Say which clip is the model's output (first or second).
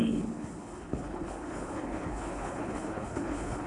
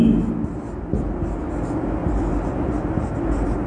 first